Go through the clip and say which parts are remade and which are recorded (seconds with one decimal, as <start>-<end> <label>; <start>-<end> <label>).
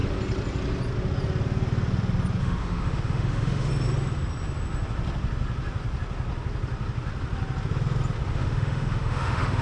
0.0-2.4 recorded; 2.4-3.7 remade; 3.7-8.3 recorded; 8.3-9.6 remade